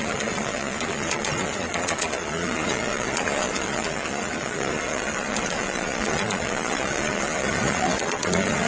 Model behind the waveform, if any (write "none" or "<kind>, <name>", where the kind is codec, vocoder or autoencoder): vocoder, Vocos